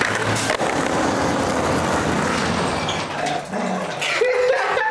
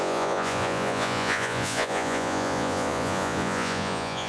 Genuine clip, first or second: first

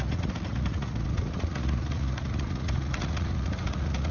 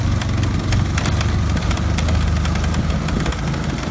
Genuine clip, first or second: second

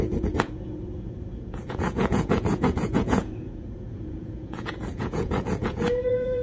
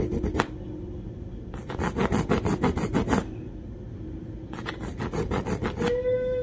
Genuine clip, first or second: second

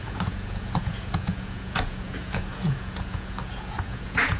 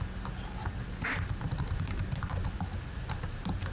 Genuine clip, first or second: second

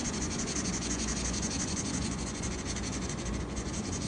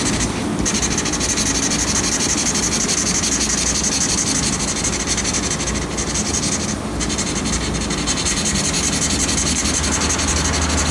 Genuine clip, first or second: second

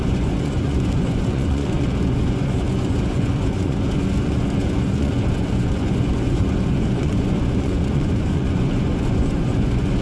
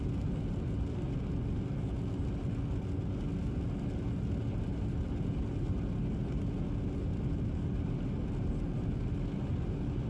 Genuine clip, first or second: second